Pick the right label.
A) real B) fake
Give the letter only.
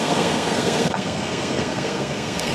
B